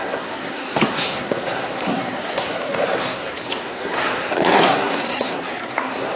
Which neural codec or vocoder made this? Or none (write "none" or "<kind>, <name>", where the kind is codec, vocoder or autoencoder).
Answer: codec, SNAC